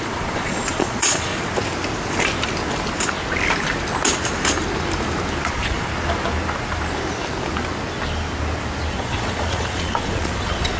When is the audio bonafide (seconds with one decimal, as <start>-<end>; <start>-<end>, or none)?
1.3-5.5; 5.9-8.9